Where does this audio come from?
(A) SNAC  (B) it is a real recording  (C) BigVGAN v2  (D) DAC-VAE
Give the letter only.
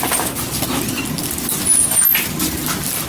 B